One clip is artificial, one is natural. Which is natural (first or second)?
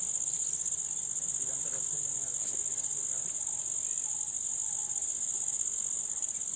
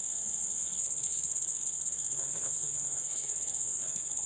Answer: first